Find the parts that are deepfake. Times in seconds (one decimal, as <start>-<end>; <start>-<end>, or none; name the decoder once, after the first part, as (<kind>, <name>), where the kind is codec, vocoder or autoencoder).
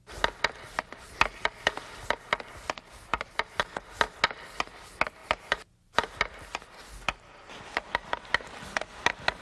3.1-3.7 (vocoder, BigVGAN v2); 5.2-6.2